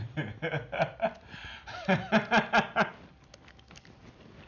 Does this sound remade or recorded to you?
recorded